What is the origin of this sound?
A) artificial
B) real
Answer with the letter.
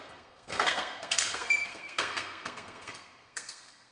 A